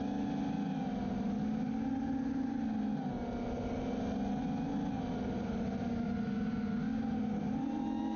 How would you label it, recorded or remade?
recorded